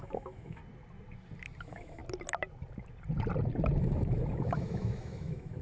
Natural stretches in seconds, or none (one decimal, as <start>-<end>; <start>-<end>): 0.6-1.6; 2.0-3.8